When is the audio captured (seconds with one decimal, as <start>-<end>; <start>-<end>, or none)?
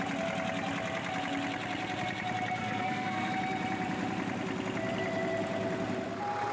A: 0.0-2.6; 3.3-6.5